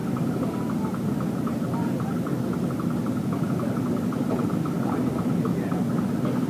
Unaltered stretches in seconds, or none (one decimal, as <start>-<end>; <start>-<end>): 0.0-6.5